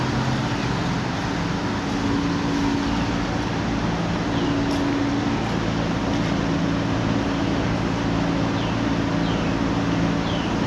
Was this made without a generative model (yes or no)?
yes